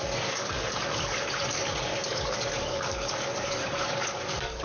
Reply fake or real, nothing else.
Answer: fake